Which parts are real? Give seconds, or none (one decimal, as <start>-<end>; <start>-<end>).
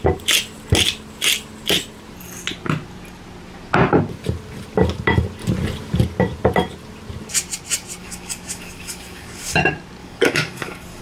0.0-8.0; 9.6-10.0